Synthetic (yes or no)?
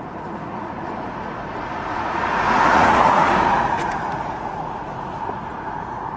yes